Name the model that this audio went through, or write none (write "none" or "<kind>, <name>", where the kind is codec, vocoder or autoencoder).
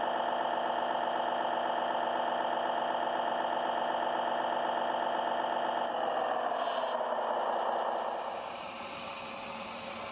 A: none